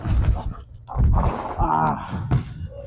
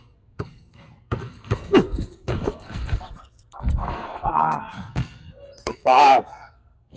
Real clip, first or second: first